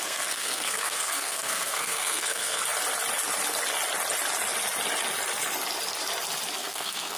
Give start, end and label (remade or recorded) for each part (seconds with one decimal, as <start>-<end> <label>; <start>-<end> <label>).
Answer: 0.0-2.6 remade; 2.6-6.6 recorded; 6.6-7.2 remade